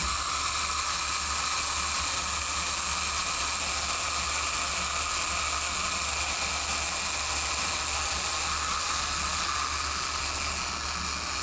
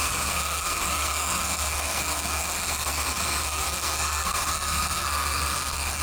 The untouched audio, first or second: first